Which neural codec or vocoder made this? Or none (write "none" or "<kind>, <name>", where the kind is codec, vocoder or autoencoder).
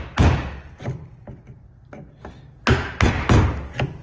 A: none